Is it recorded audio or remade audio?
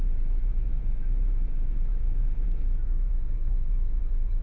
remade